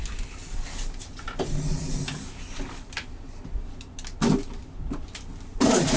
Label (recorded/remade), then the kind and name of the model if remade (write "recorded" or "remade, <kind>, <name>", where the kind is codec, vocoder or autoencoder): recorded